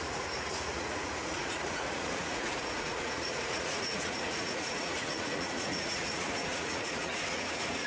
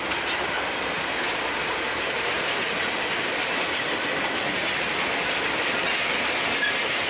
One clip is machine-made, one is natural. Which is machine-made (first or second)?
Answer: first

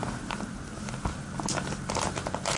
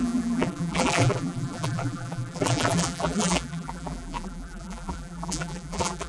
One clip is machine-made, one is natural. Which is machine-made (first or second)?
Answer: second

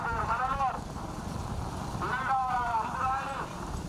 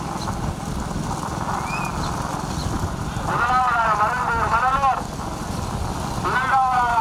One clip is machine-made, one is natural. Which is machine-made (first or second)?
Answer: first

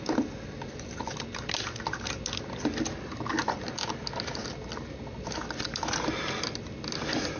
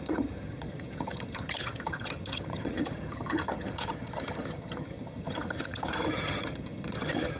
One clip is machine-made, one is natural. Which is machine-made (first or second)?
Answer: second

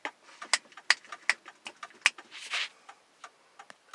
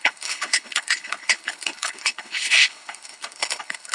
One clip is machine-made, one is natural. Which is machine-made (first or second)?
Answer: second